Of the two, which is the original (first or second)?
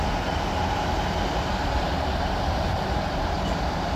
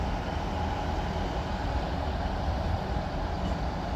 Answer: second